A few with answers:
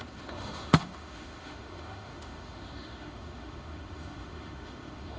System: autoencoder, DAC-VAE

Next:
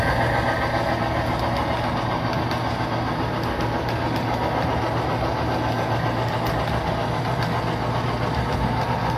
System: none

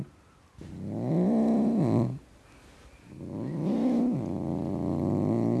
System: none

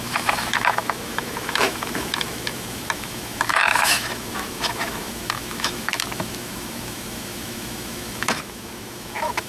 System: autoencoder, DAC-VAE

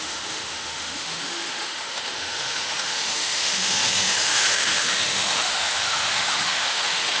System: autoencoder, DAC-VAE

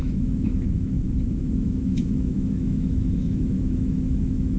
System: autoencoder, DAC-VAE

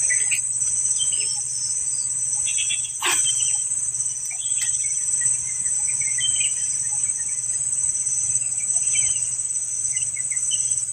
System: none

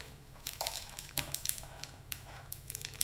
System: autoencoder, DAC-VAE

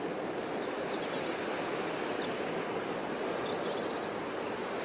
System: none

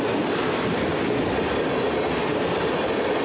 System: none